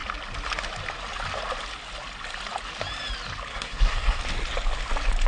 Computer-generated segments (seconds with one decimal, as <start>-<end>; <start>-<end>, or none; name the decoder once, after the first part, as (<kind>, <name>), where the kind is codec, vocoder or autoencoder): 3.5-4.2 (codec, SNAC)